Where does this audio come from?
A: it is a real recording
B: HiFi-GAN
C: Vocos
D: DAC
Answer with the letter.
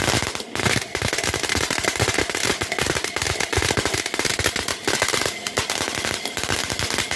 A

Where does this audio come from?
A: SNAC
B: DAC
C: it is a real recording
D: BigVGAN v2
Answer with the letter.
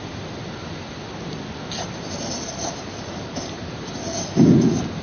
C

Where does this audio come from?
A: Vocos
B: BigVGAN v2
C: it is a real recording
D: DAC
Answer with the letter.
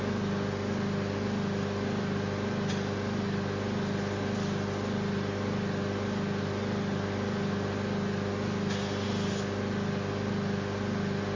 C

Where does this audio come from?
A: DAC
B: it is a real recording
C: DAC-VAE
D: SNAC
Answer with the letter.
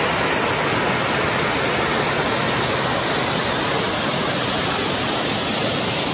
B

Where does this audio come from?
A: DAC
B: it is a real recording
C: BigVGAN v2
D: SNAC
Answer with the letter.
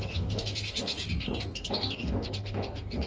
A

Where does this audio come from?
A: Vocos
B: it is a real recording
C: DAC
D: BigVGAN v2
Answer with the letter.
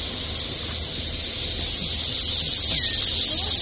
B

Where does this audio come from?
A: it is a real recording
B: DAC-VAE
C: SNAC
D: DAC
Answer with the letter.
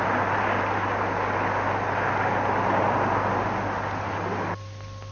A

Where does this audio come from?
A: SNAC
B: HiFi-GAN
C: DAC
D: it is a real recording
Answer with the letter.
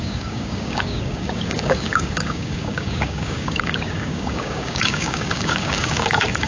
C